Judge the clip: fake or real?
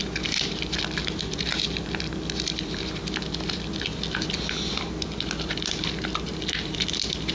fake